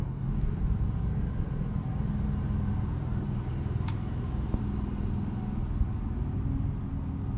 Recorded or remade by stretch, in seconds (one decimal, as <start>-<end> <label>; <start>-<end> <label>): 0.0-0.6 remade; 0.6-7.4 recorded